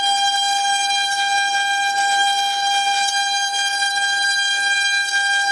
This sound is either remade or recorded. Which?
recorded